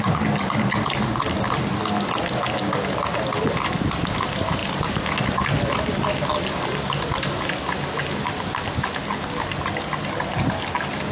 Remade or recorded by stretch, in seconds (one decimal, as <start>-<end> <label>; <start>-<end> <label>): 0.0-11.1 recorded